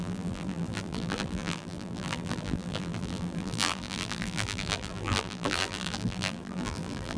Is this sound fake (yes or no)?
yes